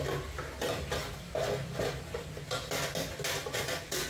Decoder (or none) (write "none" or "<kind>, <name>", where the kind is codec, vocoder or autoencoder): none